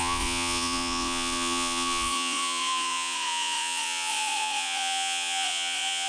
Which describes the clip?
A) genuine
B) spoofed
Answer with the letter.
B